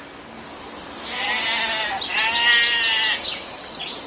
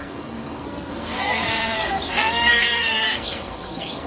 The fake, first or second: second